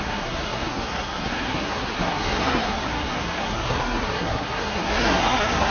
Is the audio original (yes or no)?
no